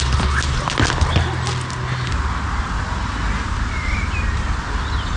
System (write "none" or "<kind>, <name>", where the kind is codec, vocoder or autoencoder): none